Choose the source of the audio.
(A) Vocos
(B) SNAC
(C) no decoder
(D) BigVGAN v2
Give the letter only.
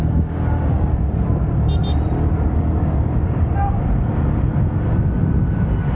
C